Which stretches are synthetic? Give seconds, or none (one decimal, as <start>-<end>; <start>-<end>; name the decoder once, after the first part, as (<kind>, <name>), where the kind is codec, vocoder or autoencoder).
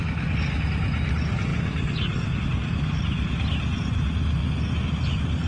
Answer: none